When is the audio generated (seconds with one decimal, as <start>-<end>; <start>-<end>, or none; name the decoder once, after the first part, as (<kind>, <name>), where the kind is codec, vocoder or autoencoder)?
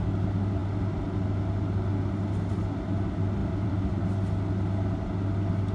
3.4-4.0 (vocoder, BigVGAN v2)